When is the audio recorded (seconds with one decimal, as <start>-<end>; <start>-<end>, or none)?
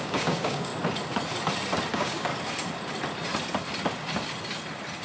0.7-1.9; 2.3-5.0